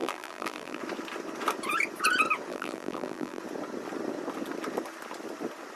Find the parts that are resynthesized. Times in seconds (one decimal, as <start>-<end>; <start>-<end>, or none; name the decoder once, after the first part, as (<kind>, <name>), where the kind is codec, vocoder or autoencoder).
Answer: 0.0-0.8 (vocoder, BigVGAN v2); 2.5-3.4